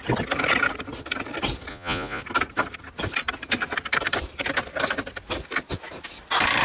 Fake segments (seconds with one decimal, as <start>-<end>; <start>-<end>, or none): 1.7-2.2